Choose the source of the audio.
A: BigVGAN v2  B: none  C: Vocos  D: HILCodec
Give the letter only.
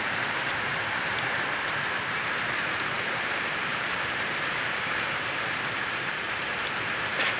A